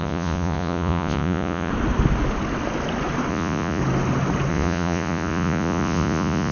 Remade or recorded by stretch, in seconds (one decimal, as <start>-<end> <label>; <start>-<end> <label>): 0.0-1.7 remade; 1.7-3.3 recorded; 3.3-3.8 remade; 3.8-4.5 recorded; 4.5-6.5 remade